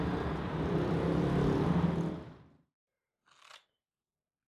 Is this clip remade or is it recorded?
recorded